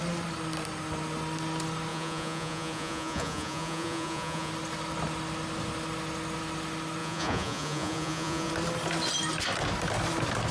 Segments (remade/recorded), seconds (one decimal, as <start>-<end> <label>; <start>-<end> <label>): 0.0-1.9 recorded; 1.9-4.5 remade; 4.5-7.0 recorded; 7.0-8.5 remade; 8.5-10.5 recorded